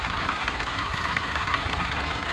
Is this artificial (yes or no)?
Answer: yes